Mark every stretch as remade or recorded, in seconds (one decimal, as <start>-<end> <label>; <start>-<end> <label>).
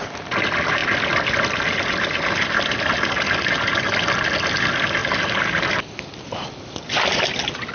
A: 0.0-7.7 recorded